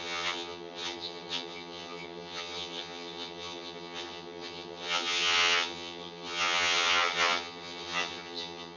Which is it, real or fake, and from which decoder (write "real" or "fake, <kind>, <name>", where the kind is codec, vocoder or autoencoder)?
fake, vocoder, HiFi-GAN